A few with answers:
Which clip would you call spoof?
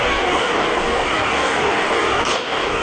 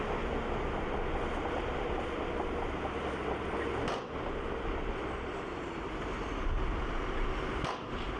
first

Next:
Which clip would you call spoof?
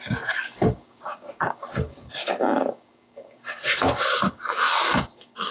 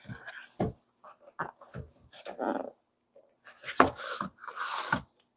first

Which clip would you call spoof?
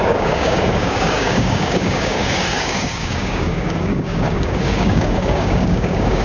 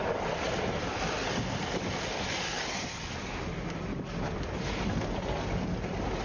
first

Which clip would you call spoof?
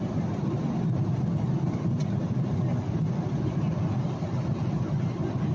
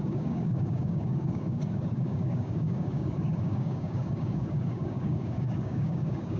second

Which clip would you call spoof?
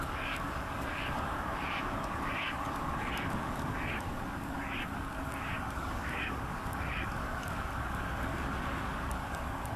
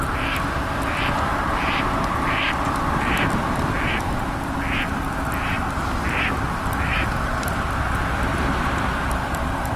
first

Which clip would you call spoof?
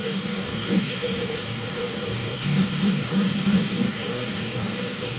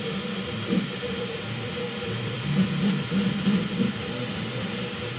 first